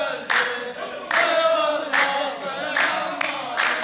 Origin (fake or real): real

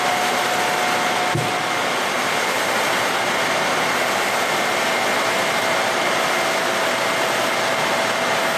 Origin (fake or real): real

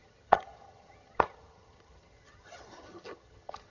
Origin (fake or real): fake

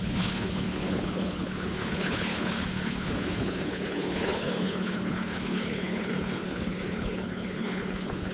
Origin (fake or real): fake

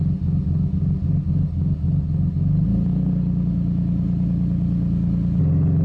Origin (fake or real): real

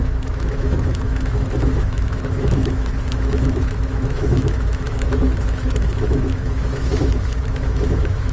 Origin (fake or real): fake